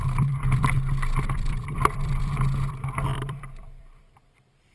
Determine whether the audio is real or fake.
fake